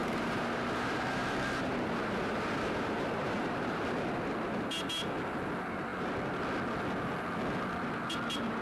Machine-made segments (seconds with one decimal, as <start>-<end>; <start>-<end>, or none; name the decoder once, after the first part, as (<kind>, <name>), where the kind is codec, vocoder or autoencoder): 0.0-4.1 (vocoder, BigVGAN v2)